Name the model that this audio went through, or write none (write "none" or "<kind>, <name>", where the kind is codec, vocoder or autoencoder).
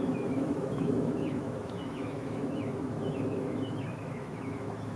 autoencoder, DAC-VAE